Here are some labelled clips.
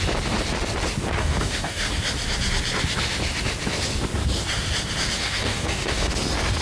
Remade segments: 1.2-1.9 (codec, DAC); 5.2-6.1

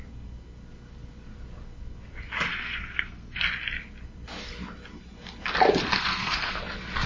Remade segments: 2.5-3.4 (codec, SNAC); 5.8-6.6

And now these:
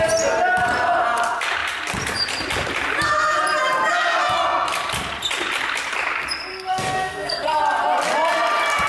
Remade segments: 6.5-7.6 (codec, SNAC)